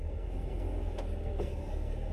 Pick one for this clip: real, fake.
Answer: fake